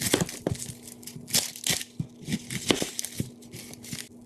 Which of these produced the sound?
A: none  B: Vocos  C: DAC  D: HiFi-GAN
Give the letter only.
A